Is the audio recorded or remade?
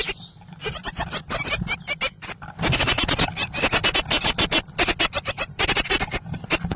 recorded